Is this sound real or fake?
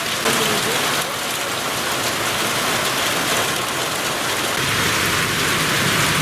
real